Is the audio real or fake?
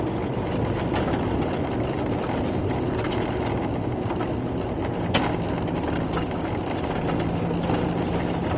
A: real